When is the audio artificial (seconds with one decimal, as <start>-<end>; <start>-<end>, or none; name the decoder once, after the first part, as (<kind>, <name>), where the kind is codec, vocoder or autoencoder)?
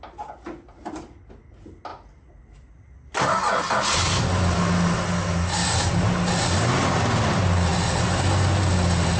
none